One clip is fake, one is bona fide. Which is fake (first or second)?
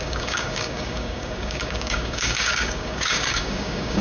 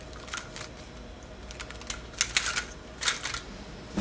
first